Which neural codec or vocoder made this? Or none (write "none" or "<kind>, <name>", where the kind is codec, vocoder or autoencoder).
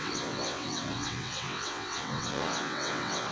vocoder, WaveNeXt